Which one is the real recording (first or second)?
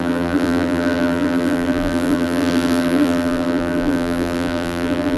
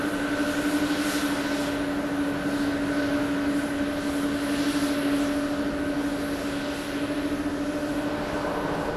second